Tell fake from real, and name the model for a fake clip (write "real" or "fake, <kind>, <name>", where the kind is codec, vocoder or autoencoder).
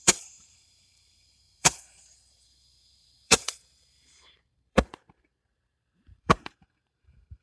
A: fake, vocoder, BigVGAN v2